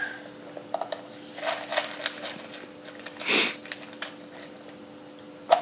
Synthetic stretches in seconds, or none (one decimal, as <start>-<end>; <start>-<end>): none